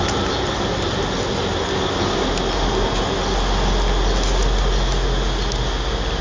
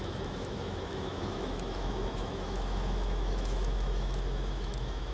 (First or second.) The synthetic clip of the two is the second